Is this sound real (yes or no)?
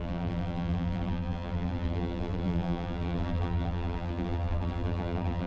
no